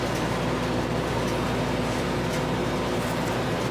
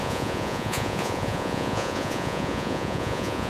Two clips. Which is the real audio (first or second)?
first